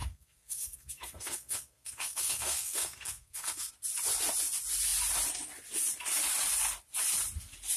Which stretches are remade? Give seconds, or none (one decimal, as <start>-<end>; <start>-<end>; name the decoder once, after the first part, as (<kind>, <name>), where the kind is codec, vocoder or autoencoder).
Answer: 0.0-3.7 (codec, SNAC)